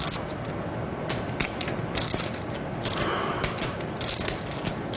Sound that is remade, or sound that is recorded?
recorded